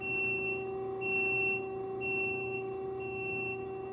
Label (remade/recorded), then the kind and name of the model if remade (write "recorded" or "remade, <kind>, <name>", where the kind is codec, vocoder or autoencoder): remade, autoencoder, DAC-VAE